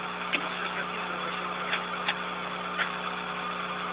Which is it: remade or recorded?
recorded